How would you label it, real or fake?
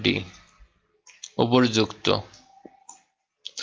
real